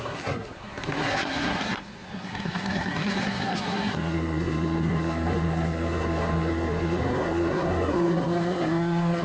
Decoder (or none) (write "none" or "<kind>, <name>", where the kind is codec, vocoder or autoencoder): codec, SNAC